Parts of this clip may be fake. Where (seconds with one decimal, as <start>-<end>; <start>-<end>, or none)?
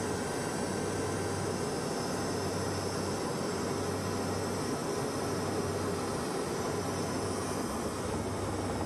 none